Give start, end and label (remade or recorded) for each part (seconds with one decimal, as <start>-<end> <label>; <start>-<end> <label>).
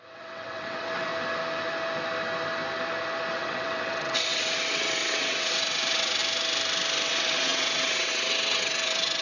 0.0-1.1 remade; 1.1-3.3 recorded; 3.3-6.2 remade; 6.2-7.1 recorded; 7.1-9.2 remade